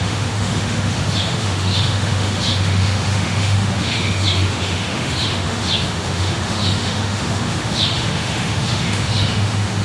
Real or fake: fake